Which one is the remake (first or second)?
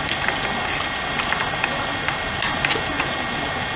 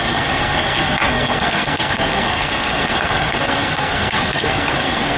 second